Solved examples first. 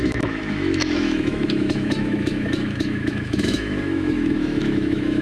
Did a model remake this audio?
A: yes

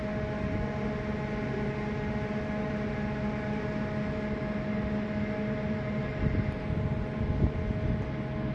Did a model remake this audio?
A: no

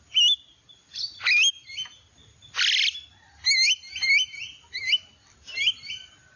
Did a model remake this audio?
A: no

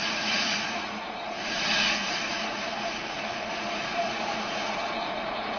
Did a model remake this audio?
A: yes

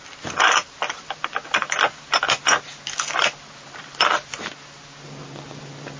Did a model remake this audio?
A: no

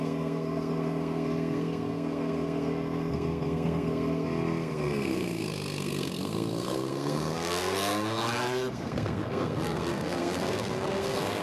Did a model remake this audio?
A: yes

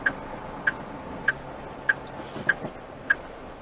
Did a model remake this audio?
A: no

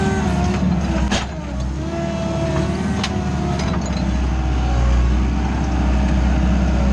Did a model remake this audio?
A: no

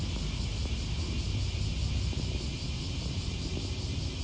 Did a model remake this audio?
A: no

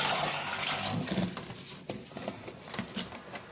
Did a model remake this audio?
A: no